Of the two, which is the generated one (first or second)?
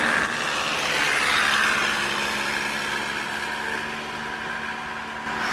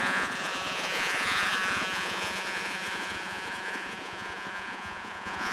second